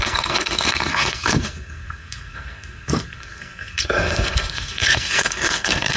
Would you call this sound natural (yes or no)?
no